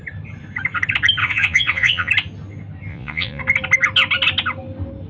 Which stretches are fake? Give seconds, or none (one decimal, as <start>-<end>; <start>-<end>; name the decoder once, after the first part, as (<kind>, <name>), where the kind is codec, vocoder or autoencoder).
1.2-2.1 (vocoder, Vocos); 2.9-3.4